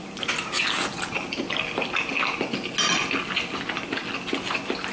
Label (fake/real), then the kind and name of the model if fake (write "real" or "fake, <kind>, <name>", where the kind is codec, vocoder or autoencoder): real